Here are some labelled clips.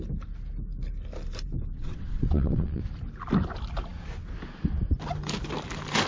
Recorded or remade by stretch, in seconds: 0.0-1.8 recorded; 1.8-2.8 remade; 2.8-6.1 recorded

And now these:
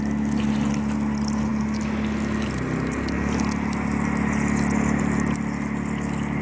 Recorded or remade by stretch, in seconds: 0.0-6.4 recorded

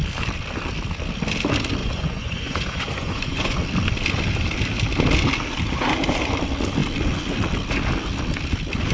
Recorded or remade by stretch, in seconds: 0.0-1.8 recorded; 1.8-3.6 remade; 3.6-8.9 recorded

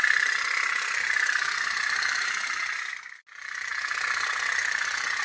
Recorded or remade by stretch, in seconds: 0.0-5.2 recorded